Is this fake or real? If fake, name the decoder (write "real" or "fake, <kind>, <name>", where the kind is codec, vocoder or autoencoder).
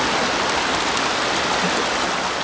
real